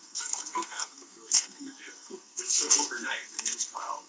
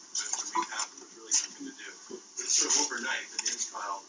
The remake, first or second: first